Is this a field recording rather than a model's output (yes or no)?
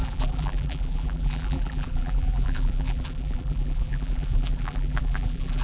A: no